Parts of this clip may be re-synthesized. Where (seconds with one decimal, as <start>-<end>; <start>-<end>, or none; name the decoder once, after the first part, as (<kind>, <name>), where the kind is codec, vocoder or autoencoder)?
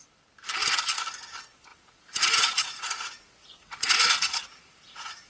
1.7-5.3 (vocoder, Vocos)